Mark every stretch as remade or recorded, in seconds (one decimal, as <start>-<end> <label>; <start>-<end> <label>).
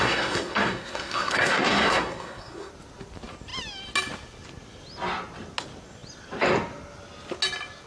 0.0-2.7 remade; 2.7-7.9 recorded